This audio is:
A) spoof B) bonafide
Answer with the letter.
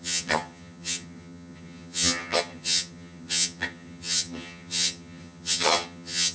A